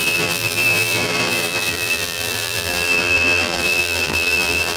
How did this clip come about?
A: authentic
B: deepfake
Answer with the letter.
B